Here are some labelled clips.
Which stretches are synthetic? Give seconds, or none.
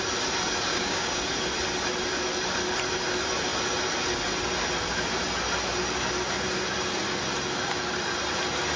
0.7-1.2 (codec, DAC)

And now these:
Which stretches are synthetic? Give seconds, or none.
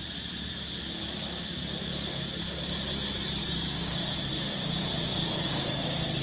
3.4-4.0 (codec, DAC); 5.1-5.8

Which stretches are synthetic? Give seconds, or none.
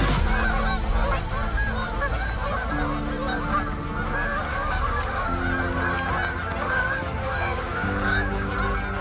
4.5-5.4 (codec, DAC); 6.6-8.5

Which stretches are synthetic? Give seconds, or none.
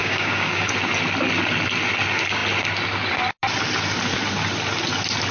0.0-0.7 (codec, DAC)